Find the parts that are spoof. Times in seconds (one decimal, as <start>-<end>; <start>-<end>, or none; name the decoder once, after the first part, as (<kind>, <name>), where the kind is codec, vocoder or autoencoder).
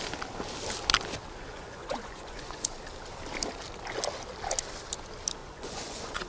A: 1.5-2.7 (vocoder, Vocos); 5.4-6.3